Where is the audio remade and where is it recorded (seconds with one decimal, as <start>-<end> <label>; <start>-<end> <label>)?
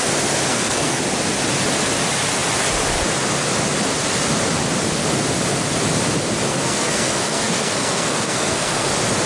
0.0-0.5 recorded; 0.5-1.0 remade; 1.0-6.5 recorded; 6.5-8.9 remade; 8.9-9.3 recorded